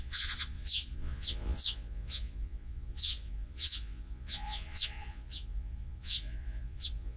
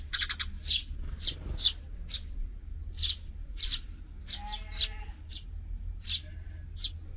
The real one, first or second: second